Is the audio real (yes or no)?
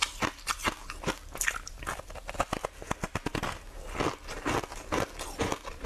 yes